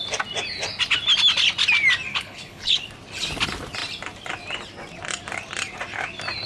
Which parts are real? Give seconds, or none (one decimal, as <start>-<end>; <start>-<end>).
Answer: 0.0-2.1; 2.9-6.5